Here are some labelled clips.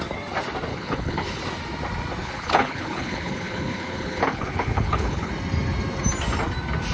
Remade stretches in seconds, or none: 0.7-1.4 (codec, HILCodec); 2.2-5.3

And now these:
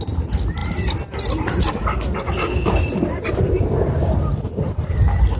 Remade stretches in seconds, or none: none

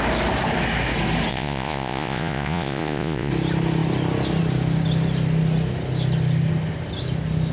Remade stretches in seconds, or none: 1.3-3.3 (vocoder, Vocos)

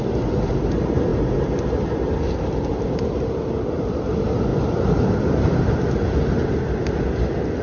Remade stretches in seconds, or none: none

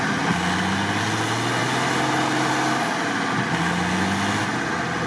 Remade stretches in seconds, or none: none

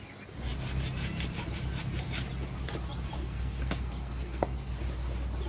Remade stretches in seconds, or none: 3.2-4.7 (codec, SNAC)